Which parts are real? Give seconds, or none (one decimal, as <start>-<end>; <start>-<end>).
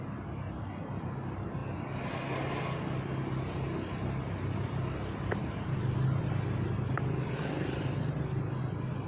0.0-9.1